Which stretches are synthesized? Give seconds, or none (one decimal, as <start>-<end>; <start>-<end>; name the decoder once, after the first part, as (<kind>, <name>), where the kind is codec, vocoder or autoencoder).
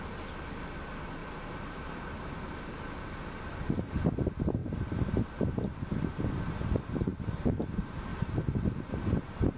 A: 1.2-2.3 (vocoder, BigVGAN v2); 4.6-5.8